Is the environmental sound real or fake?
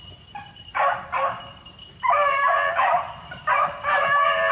fake